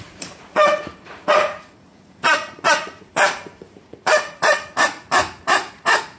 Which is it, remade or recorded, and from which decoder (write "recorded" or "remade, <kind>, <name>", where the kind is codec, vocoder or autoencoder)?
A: remade, vocoder, Vocos